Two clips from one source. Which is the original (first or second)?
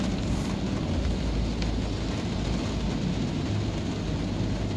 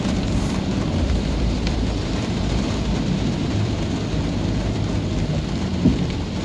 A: first